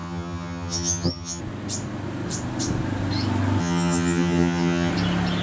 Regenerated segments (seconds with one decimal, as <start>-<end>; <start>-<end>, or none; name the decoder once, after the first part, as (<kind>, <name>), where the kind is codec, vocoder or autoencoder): 0.0-1.4 (vocoder, HiFi-GAN); 3.6-4.9